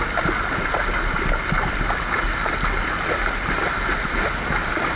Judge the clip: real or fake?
real